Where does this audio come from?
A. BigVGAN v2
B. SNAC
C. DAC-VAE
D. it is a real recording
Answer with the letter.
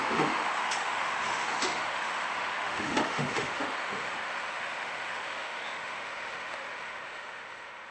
C